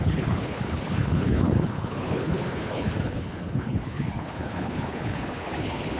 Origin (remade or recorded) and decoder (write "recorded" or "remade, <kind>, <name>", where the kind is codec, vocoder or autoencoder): remade, codec, HILCodec